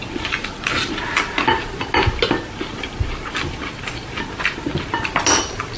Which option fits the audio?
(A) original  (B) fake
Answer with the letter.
A